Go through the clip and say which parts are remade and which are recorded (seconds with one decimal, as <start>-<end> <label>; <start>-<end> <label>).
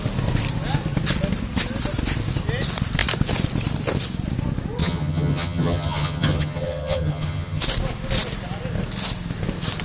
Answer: 0.0-4.8 recorded; 4.8-7.6 remade; 7.6-9.8 recorded